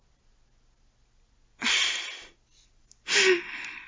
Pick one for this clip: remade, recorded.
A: recorded